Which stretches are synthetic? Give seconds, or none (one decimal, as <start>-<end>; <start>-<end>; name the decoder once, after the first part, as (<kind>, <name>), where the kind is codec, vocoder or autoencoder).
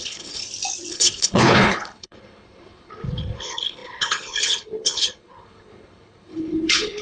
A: 0.0-0.4 (codec, HILCodec); 0.9-7.0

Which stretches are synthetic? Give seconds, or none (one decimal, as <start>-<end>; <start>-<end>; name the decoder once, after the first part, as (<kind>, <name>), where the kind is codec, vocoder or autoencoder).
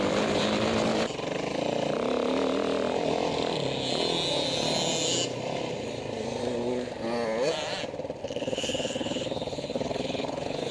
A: 8.2-10.7 (codec, HILCodec)